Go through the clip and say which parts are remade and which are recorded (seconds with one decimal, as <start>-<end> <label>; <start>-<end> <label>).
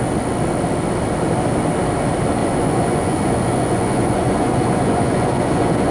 0.0-2.4 recorded; 2.4-5.9 remade